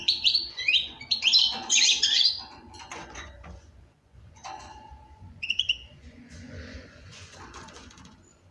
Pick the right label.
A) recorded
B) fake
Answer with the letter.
B